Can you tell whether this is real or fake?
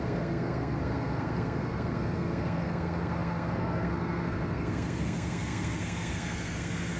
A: fake